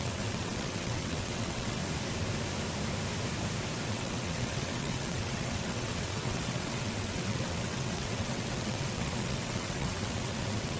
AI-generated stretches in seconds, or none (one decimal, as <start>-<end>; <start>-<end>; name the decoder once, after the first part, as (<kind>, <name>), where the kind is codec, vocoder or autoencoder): 0.0-1.8 (vocoder, WaveNeXt); 3.9-10.8